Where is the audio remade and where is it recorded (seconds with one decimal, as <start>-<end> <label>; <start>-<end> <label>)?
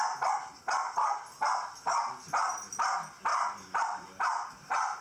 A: 0.0-3.3 recorded; 3.3-5.0 remade